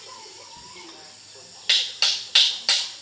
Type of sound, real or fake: real